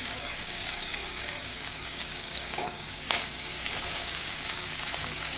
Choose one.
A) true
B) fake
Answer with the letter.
B